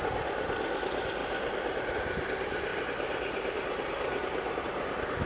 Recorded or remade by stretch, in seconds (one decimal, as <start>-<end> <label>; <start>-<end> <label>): 0.0-1.2 recorded; 1.2-1.9 remade; 1.9-2.7 recorded; 2.7-4.6 remade; 4.6-5.3 recorded